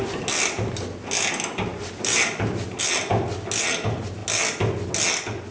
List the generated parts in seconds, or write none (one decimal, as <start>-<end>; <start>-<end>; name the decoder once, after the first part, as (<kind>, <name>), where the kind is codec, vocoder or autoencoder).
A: 1.7-2.8 (vocoder, BigVGAN v2)